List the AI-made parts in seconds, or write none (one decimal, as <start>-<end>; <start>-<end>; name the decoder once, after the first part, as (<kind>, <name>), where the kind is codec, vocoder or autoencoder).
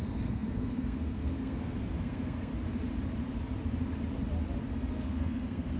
0.0-2.5 (codec, SNAC); 4.7-5.8